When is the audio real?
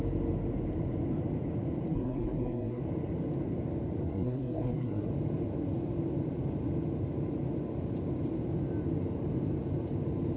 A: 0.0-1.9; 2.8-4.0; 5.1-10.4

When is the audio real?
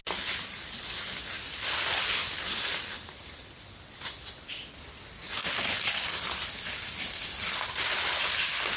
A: 0.0-8.8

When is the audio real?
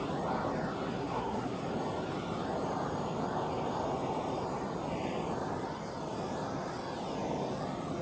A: 0.0-1.0; 1.6-8.0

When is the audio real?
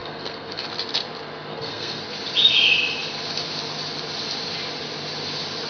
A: 0.7-1.5; 2.0-5.7